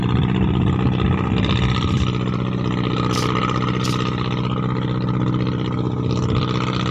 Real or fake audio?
real